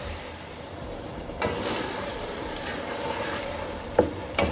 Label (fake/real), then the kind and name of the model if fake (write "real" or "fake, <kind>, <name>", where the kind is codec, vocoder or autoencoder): fake, vocoder, BigVGAN v2